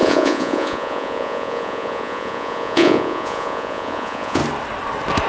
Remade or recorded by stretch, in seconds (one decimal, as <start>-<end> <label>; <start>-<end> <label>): 0.0-4.4 remade; 4.4-5.3 recorded